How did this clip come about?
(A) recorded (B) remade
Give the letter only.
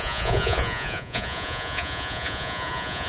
B